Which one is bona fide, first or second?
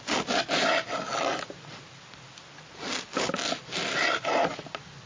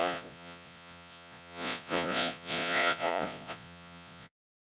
first